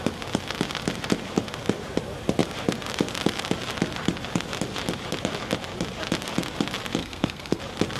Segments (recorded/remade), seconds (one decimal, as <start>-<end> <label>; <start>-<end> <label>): 0.0-7.0 recorded; 7.0-7.6 remade; 7.6-8.0 recorded